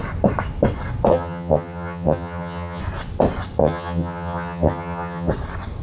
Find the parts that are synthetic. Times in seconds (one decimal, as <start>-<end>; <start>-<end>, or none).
1.1-2.8; 3.6-5.3